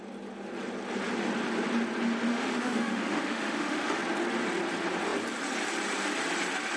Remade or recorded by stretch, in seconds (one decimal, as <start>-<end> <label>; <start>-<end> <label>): 0.0-2.3 recorded; 2.3-4.0 remade; 4.0-6.8 recorded